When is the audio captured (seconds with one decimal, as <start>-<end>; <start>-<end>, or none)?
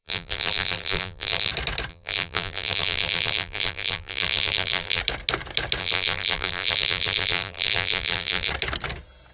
1.5-1.9; 5.0-5.8; 8.5-9.3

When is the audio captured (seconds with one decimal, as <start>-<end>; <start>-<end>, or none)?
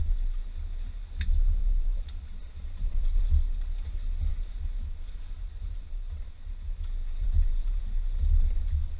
0.0-1.6; 3.2-7.0; 7.8-9.0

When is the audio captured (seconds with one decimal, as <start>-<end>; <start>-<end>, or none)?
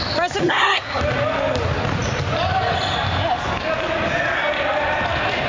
0.0-0.4; 1.0-5.5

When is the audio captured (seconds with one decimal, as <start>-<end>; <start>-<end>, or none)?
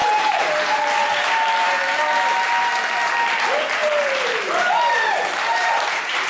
2.0-3.8